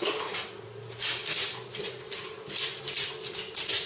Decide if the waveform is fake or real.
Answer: real